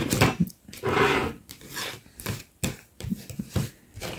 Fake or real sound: fake